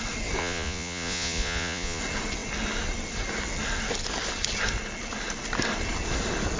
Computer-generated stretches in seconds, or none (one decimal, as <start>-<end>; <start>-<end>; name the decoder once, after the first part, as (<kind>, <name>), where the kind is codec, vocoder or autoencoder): 0.4-2.0 (vocoder, Vocos)